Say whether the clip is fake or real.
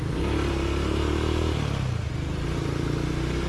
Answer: real